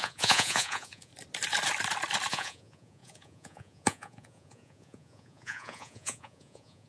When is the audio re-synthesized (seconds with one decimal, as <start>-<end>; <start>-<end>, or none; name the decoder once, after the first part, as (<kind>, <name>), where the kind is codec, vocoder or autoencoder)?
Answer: 0.0-1.1 (vocoder, Vocos); 2.3-6.9

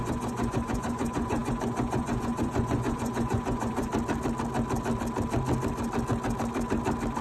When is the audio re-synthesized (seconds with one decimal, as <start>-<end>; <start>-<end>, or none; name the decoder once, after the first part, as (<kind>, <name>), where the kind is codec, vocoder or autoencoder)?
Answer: 0.0-3.9 (vocoder, Vocos)

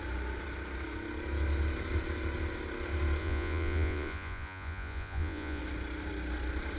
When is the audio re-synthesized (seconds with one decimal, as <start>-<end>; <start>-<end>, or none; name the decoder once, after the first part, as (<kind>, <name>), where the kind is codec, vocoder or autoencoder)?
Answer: 3.2-5.6 (vocoder, Vocos)